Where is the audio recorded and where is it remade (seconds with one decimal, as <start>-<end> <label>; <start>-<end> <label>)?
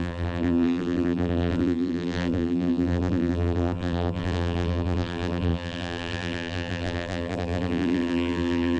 0.0-8.8 remade